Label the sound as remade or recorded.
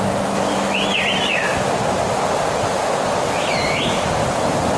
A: recorded